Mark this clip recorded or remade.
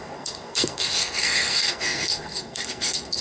remade